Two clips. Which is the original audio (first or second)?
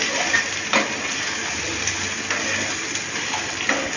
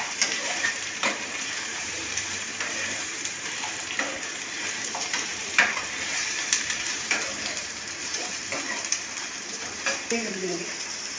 first